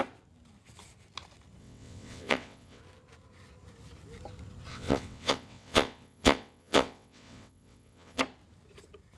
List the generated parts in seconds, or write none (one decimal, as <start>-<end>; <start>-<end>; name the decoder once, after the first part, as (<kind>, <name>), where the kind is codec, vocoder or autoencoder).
1.6-2.8 (vocoder, WaveNeXt); 4.7-8.2